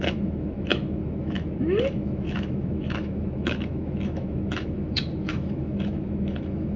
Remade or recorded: remade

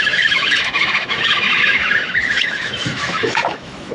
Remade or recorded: remade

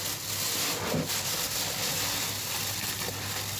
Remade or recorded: recorded